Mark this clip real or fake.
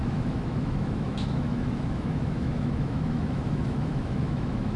fake